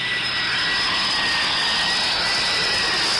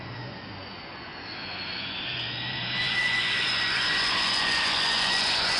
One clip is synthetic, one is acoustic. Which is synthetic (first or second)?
second